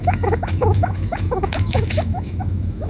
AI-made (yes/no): yes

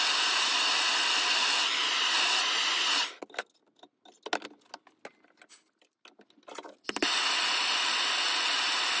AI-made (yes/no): no